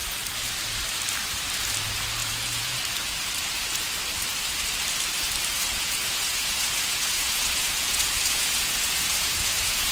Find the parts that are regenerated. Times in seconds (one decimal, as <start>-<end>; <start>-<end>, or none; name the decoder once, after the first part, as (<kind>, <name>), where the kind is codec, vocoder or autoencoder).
2.2-2.8 (vocoder, Vocos); 5.5-9.9